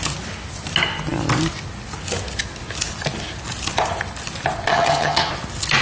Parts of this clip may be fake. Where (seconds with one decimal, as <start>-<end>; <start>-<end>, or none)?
4.7-5.3